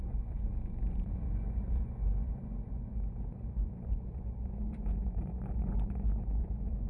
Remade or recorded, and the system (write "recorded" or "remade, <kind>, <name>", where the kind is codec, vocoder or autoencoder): remade, vocoder, Vocos